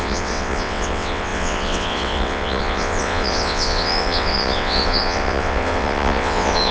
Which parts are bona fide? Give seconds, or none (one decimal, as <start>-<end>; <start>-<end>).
none